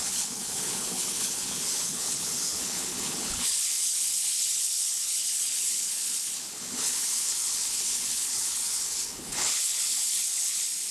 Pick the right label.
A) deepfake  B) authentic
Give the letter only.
A